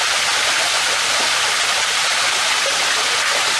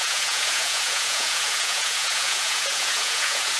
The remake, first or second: second